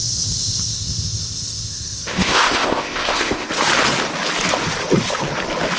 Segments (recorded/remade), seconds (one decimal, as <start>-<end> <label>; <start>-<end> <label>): 0.0-3.5 remade; 3.5-5.8 recorded